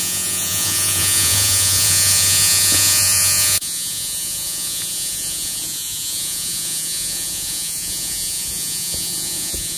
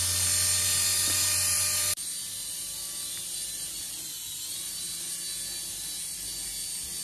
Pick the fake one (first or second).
first